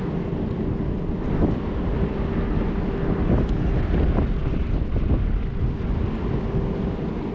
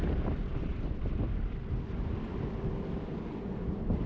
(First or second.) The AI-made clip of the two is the second